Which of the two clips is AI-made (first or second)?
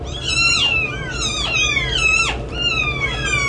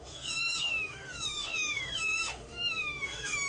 second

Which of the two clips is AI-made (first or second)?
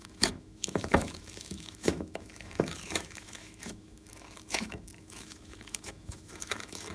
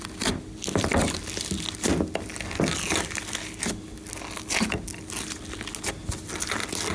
first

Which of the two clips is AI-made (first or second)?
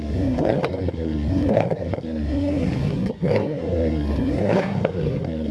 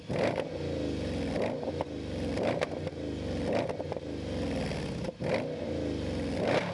first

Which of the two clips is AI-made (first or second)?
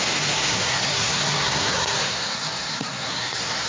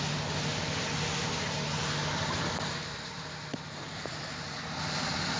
first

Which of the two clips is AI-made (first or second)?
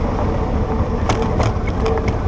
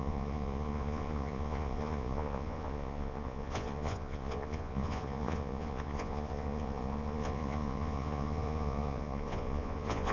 second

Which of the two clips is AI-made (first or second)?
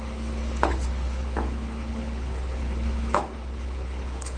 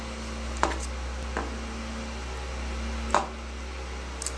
first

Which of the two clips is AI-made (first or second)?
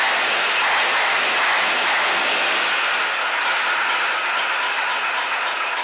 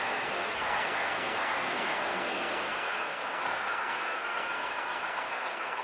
second